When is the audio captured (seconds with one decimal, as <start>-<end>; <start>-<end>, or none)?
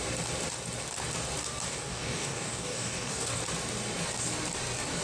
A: 0.0-1.7; 3.4-5.0